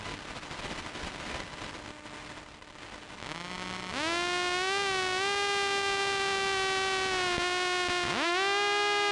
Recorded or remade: recorded